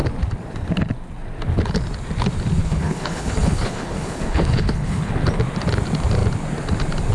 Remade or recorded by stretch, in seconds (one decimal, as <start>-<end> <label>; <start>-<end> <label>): 0.0-2.6 recorded; 2.6-5.1 remade; 5.1-7.1 recorded

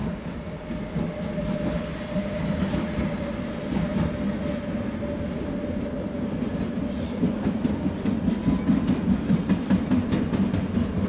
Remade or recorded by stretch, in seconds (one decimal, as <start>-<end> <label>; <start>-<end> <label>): 0.0-11.1 recorded

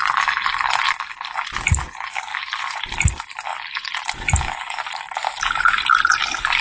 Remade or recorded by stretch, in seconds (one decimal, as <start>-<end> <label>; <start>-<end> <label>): 0.0-2.3 recorded; 2.3-3.1 remade; 3.1-3.5 recorded; 3.5-5.9 remade; 5.9-6.6 recorded